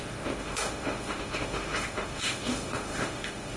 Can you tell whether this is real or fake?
fake